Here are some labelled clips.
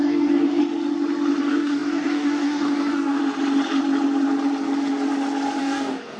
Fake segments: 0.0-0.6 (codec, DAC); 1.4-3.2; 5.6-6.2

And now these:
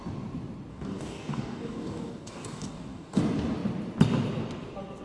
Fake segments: 0.7-3.2 (codec, DAC)

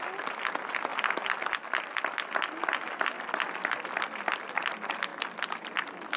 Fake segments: none